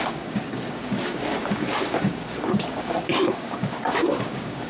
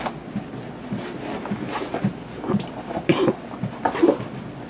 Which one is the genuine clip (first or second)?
second